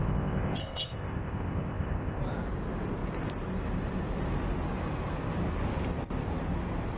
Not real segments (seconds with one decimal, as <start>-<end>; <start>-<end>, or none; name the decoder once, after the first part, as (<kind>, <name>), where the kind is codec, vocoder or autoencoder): 0.0-2.2 (codec, ZipCodec)